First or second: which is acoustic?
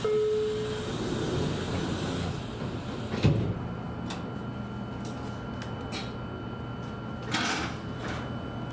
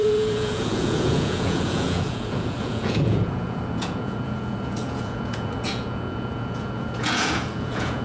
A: first